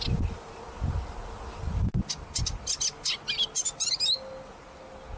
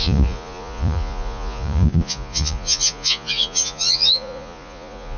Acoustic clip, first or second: first